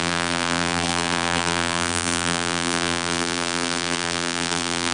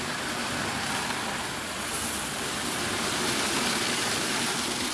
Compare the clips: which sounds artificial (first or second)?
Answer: first